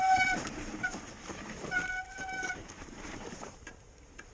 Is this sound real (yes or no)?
no